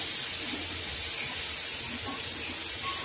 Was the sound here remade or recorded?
recorded